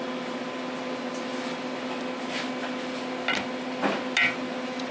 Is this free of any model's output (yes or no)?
yes